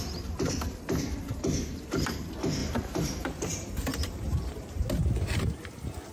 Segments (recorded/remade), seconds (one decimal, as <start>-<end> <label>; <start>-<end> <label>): 0.0-2.6 recorded; 2.6-4.9 remade; 4.9-6.1 recorded